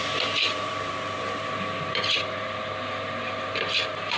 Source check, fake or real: fake